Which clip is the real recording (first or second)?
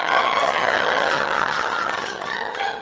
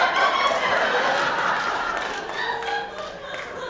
second